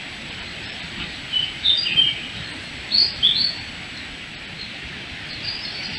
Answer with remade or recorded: recorded